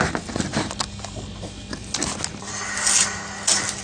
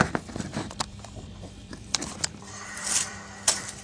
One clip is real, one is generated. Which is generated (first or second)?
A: second